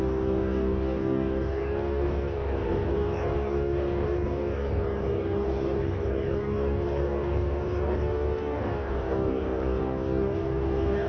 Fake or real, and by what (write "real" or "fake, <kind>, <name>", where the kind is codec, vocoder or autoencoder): fake, codec, DAC